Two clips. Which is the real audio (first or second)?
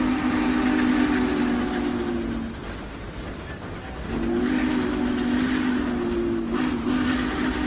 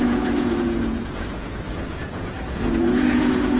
first